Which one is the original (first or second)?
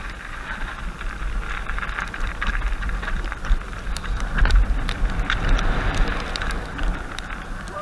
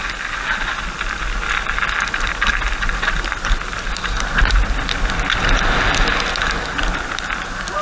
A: second